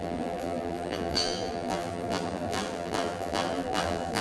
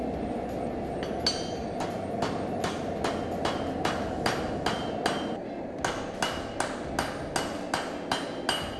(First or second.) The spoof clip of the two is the first